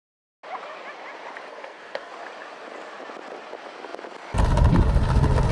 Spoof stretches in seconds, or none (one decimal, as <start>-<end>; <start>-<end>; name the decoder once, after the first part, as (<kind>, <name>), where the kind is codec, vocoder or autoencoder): 1.5-2.1 (codec, SNAC)